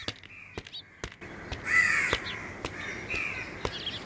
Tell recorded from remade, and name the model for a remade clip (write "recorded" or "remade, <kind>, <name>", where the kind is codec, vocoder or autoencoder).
recorded